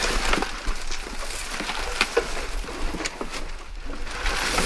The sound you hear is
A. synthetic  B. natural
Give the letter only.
B